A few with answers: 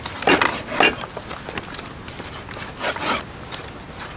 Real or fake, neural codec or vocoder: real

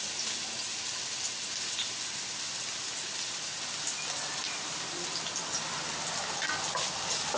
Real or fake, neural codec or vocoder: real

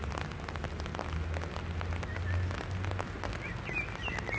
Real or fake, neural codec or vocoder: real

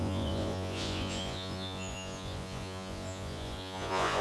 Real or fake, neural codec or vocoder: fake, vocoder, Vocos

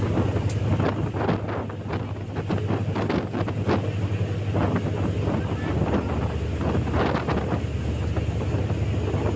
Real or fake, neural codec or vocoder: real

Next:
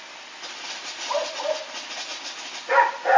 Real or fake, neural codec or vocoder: real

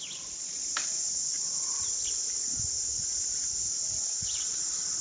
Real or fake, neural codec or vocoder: real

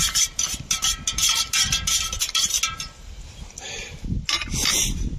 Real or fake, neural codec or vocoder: real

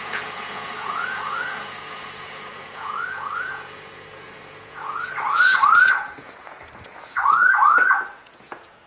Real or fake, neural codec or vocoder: fake, vocoder, Vocos